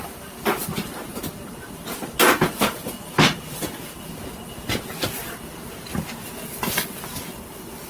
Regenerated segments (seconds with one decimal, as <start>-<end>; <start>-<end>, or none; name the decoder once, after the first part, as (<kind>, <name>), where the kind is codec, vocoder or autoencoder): none